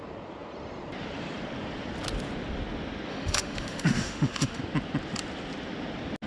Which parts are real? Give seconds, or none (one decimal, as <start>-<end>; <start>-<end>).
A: 0.0-3.1; 4.6-6.3